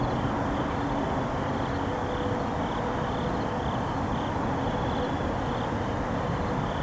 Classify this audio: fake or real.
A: real